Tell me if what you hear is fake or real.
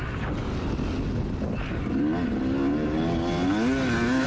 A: real